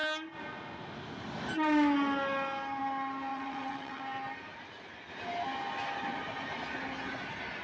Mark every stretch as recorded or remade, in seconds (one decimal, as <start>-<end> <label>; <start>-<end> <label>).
0.0-3.3 recorded; 3.3-4.0 remade; 4.0-7.6 recorded